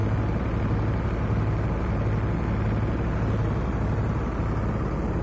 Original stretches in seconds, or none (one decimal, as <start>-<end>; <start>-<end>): 0.0-5.2